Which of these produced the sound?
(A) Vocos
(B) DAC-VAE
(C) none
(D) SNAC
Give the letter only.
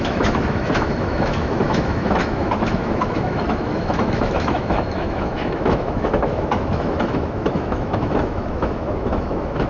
B